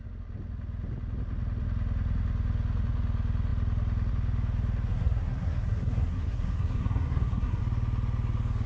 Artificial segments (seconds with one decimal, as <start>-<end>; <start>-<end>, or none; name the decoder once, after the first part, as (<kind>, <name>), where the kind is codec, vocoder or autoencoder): 4.9-7.6 (codec, SNAC)